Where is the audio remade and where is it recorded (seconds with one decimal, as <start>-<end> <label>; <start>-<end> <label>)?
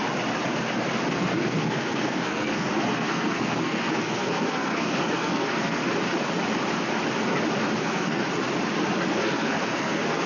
0.0-1.1 recorded; 1.1-5.8 remade; 5.8-7.8 recorded; 7.8-8.2 remade; 8.2-9.1 recorded; 9.1-10.3 remade